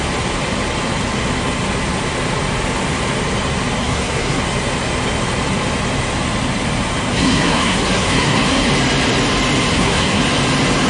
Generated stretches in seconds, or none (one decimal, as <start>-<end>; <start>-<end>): 3.8-4.4; 7.1-8.7; 9.7-10.2